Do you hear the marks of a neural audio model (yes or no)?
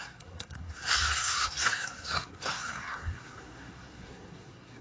yes